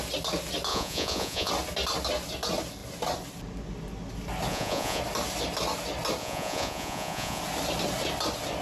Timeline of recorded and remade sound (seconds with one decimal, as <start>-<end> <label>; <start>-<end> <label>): 0.0-0.7 recorded; 0.7-1.5 remade; 1.5-4.5 recorded; 4.5-5.0 remade; 5.0-6.2 recorded; 6.2-7.4 remade; 7.4-8.6 recorded